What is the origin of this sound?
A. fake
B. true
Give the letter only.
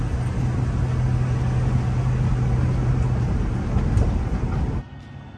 B